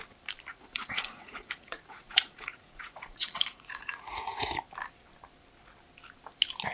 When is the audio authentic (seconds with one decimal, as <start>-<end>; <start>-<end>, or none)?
0.0-0.5; 4.5-6.7